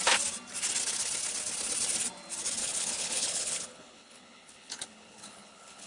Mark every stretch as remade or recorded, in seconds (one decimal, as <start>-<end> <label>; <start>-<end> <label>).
0.0-2.6 recorded; 2.6-5.9 remade